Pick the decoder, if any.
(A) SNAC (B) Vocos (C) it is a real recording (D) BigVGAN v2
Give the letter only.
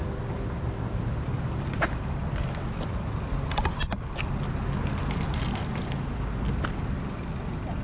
C